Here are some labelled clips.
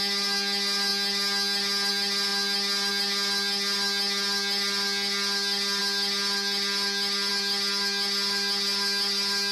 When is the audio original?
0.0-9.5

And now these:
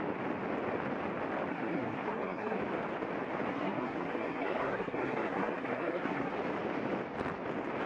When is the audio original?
0.0-1.5; 2.6-3.5; 6.3-7.9

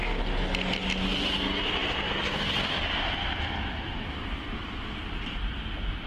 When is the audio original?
0.0-1.8; 5.5-6.1